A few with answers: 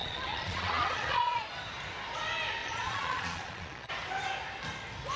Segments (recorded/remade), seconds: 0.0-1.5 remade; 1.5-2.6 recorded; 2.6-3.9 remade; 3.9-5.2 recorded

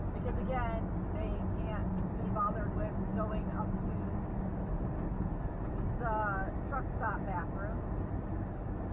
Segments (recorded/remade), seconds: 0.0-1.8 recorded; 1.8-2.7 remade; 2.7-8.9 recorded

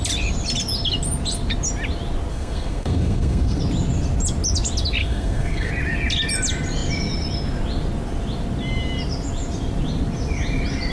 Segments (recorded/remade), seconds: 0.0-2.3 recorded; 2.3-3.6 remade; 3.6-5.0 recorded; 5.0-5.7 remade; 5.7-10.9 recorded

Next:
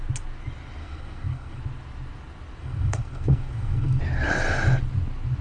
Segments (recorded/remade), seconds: 0.0-0.8 recorded; 0.8-1.6 remade; 1.6-2.6 recorded; 2.6-4.0 remade; 4.0-5.4 recorded

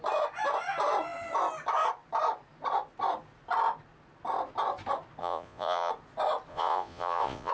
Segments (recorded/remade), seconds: 0.0-5.2 recorded; 5.2-5.9 remade; 5.9-6.5 recorded; 6.5-7.5 remade